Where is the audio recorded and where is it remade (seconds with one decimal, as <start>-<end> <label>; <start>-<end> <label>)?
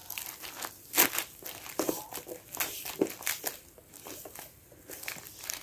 0.0-5.6 recorded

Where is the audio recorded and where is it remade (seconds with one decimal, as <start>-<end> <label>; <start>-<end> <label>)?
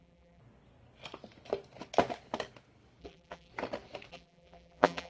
0.0-0.4 remade; 0.4-3.0 recorded; 3.0-3.5 remade; 3.5-4.1 recorded; 4.1-5.1 remade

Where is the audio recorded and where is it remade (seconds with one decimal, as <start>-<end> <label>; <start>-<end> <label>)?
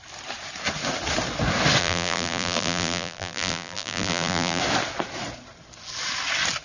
0.0-1.8 recorded; 1.8-4.6 remade; 4.6-6.6 recorded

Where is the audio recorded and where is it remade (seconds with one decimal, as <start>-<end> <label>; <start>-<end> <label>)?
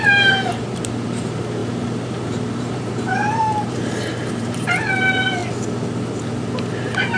0.0-5.4 remade; 5.4-6.2 recorded; 6.2-7.2 remade